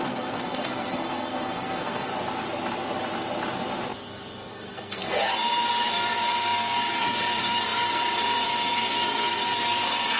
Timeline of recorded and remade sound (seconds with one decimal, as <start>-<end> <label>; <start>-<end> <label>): 0.0-2.1 remade; 2.1-4.5 recorded; 4.5-10.2 remade